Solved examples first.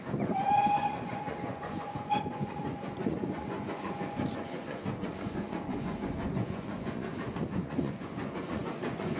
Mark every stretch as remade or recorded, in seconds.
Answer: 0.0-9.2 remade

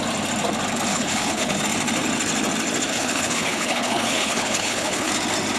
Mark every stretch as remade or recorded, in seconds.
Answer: 0.0-0.9 recorded; 0.9-1.6 remade; 1.6-2.9 recorded; 2.9-5.1 remade; 5.1-5.6 recorded

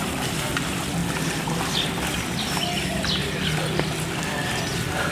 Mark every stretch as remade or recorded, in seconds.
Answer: 0.0-1.0 remade; 1.0-4.1 recorded; 4.1-5.1 remade

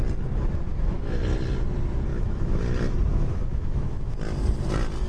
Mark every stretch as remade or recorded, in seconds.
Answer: 0.0-0.7 recorded; 0.7-1.2 remade; 1.2-2.1 recorded; 2.1-2.6 remade; 2.6-3.1 recorded; 3.1-4.1 remade; 4.1-5.1 recorded

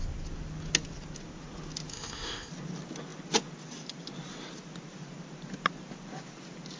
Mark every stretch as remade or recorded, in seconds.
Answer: 0.0-1.9 recorded; 1.9-2.5 remade; 2.5-6.8 recorded

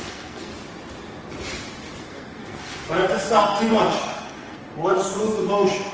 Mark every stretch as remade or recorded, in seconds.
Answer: 0.0-0.5 remade; 0.5-2.0 recorded; 2.0-5.9 remade

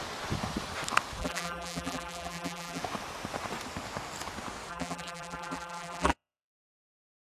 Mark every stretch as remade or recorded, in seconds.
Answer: 0.0-1.2 recorded; 1.2-2.8 remade; 2.8-4.7 recorded; 4.7-6.5 remade; 6.5-7.2 recorded

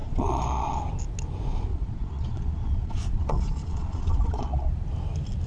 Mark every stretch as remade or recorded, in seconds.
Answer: 0.0-0.8 remade; 0.8-1.7 recorded; 1.7-4.7 remade; 4.7-5.5 recorded